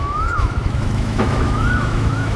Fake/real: fake